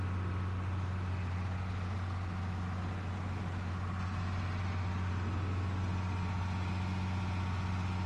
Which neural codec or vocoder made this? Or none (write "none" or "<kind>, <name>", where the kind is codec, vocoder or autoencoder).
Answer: none